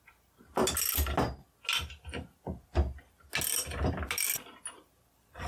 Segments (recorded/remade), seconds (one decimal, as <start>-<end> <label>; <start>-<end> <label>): 0.0-5.5 recorded